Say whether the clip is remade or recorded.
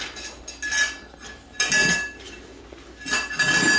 recorded